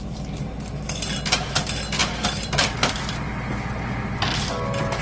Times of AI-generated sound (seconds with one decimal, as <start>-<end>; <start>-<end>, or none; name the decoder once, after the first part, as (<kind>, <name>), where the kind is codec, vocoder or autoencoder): none